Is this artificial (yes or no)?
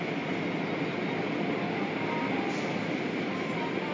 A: no